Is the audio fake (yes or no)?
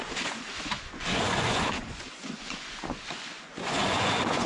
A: yes